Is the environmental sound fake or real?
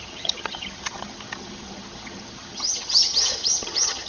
fake